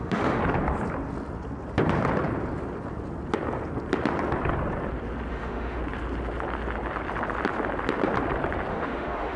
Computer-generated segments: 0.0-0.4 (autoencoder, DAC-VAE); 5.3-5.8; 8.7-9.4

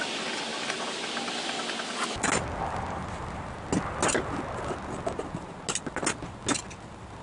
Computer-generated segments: none

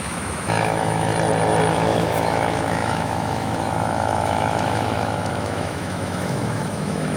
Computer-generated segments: 0.0-1.1 (autoencoder, DAC-VAE); 1.7-7.2

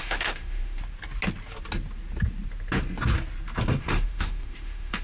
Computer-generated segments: 0.0-0.8 (autoencoder, DAC-VAE); 3.8-5.0

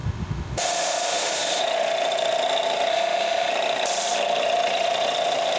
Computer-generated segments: 0.0-1.6 (autoencoder, DAC-VAE); 2.9-3.5

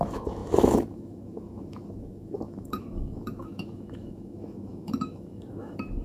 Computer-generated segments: 0.0-6.0 (autoencoder, DAC-VAE)